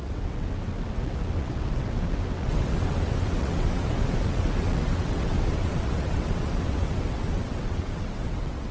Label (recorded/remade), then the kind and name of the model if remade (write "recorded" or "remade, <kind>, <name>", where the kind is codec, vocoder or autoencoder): remade, vocoder, WaveNeXt